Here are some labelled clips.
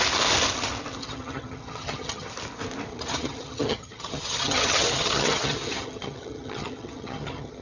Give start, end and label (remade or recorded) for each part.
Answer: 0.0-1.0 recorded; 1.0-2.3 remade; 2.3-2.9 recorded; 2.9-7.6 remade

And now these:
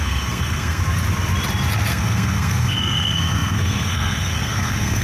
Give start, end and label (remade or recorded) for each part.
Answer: 0.0-0.8 remade; 0.8-1.9 recorded; 1.9-5.0 remade

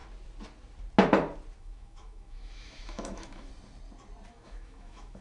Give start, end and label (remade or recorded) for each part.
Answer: 0.0-1.6 recorded; 1.6-3.5 remade; 3.5-4.3 recorded; 4.3-5.2 remade

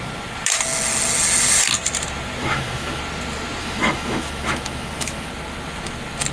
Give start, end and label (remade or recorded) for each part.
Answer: 0.0-2.4 recorded; 2.4-3.0 remade; 3.0-3.6 recorded; 3.6-5.3 remade; 5.3-6.3 recorded

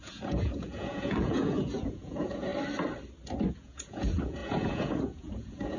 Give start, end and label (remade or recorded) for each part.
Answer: 0.0-2.5 remade; 2.5-3.5 recorded; 3.5-5.8 remade

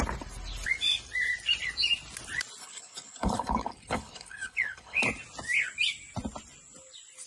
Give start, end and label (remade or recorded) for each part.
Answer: 0.0-2.6 recorded; 2.6-5.0 remade; 5.0-7.3 recorded

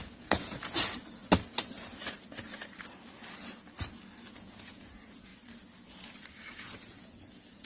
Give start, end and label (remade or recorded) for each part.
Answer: 0.0-1.2 remade; 1.2-4.4 recorded; 4.4-5.3 remade; 5.3-6.5 recorded; 6.5-7.6 remade

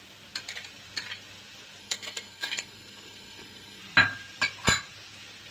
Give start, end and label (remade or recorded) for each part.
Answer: 0.0-1.8 recorded; 1.8-3.8 remade; 3.8-5.5 recorded